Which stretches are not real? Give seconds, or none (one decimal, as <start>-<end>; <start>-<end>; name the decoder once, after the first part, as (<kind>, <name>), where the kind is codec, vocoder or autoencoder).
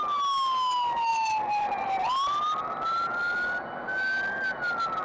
1.1-2.0 (vocoder, BigVGAN v2)